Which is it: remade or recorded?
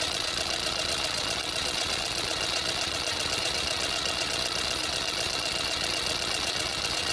remade